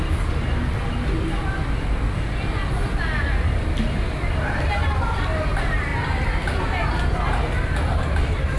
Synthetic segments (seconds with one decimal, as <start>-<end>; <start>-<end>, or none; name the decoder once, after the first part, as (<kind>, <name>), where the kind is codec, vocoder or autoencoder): none